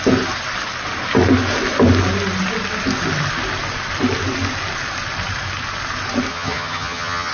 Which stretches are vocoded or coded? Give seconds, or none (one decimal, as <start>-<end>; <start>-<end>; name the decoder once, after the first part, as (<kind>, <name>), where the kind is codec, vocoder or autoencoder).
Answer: 6.3-7.3 (vocoder, HiFi-GAN)